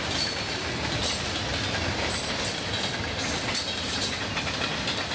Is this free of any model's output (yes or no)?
yes